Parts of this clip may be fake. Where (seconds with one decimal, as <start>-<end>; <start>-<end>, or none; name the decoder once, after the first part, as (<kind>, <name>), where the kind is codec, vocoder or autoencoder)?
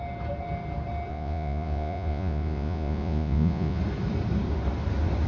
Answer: 1.1-3.8 (vocoder, Vocos)